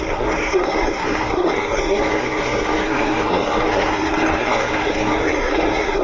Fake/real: fake